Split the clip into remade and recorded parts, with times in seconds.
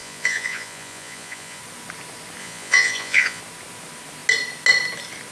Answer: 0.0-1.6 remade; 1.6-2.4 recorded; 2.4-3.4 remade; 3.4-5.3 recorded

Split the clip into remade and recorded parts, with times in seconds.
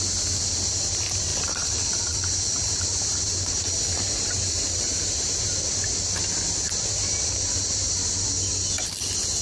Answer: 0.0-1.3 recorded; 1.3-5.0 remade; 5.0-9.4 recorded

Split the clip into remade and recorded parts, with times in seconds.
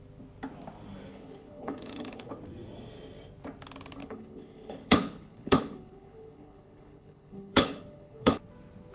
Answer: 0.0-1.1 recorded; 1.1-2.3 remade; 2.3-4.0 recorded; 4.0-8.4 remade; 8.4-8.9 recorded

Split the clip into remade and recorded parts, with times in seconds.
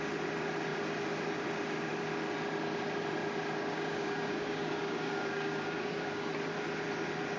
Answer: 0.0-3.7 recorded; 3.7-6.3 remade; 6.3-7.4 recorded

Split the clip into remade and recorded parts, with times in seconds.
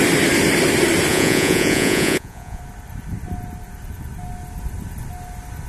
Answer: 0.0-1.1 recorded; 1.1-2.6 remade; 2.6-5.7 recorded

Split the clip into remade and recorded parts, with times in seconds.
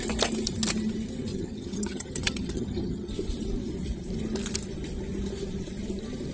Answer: 0.0-1.3 recorded; 1.3-3.1 remade; 3.1-6.3 recorded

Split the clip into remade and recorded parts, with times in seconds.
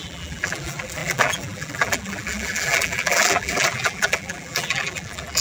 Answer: 0.0-5.4 remade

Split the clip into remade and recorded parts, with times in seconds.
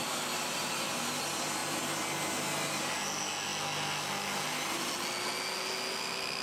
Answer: 0.0-6.4 recorded